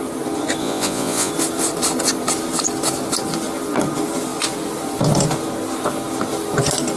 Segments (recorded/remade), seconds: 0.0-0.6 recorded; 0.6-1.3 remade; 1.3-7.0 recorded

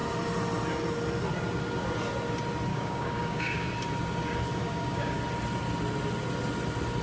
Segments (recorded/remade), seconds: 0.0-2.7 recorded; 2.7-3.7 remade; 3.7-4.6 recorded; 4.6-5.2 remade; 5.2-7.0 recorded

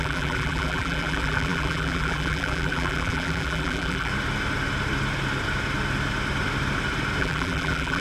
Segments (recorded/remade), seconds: 0.0-4.1 remade; 4.1-7.2 recorded; 7.2-8.0 remade

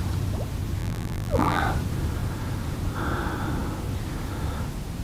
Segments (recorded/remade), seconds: 0.0-0.8 recorded; 0.8-1.6 remade; 1.6-5.0 recorded